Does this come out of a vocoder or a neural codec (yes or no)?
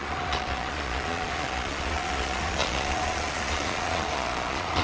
yes